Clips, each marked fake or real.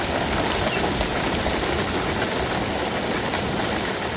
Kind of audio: real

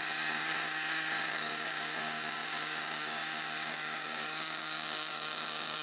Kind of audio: fake